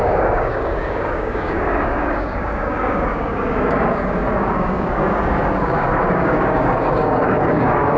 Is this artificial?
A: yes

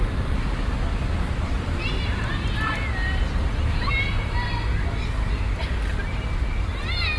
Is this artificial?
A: no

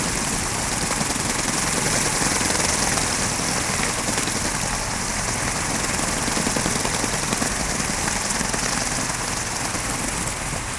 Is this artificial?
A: no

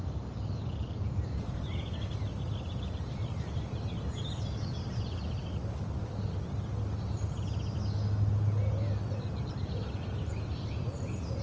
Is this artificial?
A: no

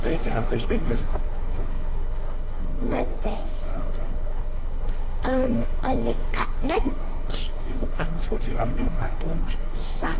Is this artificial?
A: yes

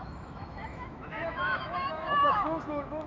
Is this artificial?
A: yes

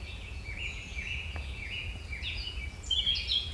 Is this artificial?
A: yes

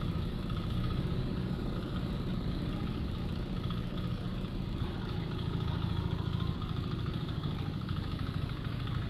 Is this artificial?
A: yes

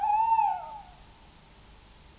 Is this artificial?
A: no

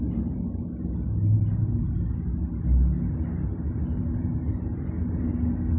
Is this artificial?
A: no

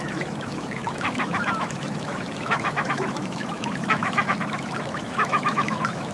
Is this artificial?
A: yes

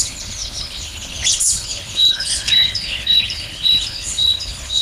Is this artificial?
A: yes